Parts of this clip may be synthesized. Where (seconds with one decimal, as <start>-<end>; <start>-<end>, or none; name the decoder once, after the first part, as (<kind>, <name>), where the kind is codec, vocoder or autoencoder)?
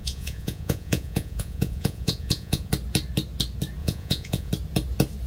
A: 0.0-2.7 (vocoder, Vocos); 3.8-4.5